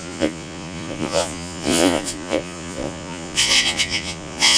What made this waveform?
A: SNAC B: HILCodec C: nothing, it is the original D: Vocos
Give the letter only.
D